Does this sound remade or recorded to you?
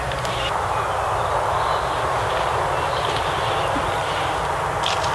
recorded